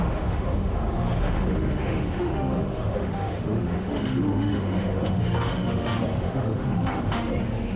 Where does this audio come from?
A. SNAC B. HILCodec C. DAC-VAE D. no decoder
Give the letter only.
C